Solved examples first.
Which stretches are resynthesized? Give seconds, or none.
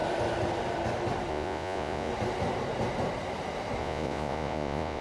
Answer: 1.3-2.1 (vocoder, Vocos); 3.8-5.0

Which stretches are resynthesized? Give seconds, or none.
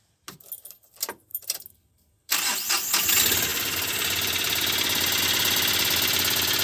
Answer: 1.3-2.7 (vocoder, BigVGAN v2)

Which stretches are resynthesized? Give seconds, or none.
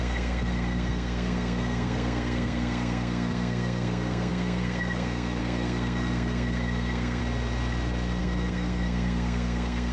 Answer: 0.0-7.2 (codec, SNAC); 8.2-9.9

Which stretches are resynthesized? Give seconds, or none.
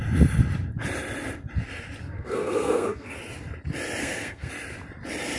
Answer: 2.0-3.2 (codec, SNAC); 4.0-4.5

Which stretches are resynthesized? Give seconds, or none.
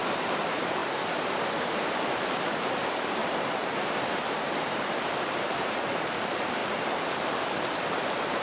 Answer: 0.0-0.8 (vocoder, BigVGAN v2); 1.6-6.6; 8.0-8.4